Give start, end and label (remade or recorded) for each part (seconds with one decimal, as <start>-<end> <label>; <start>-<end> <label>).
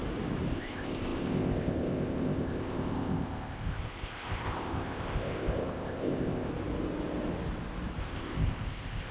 0.0-0.5 recorded; 0.5-6.5 remade; 6.5-8.0 recorded; 8.0-9.1 remade